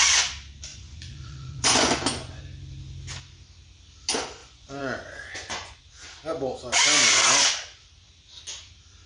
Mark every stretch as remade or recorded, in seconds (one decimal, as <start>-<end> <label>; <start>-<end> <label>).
0.0-0.7 recorded; 0.7-2.4 remade; 2.4-4.4 recorded; 4.4-5.8 remade; 5.8-9.1 recorded